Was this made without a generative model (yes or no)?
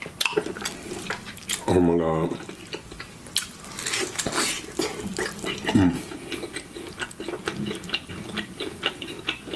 yes